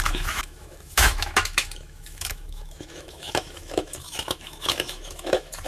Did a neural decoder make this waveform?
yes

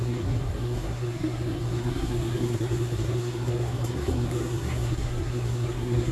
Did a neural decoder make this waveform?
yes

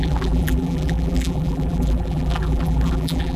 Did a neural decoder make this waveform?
yes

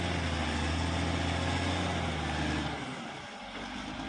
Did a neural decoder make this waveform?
no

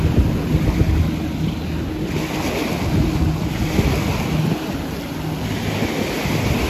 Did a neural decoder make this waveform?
no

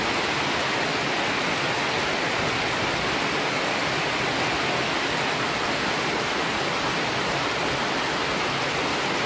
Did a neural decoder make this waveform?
no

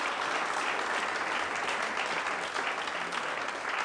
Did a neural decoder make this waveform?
no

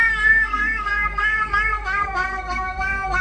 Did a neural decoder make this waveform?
yes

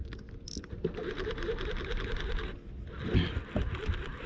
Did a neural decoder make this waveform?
no